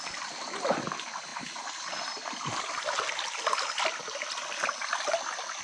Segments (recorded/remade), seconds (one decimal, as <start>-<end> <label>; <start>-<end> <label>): 0.0-5.6 recorded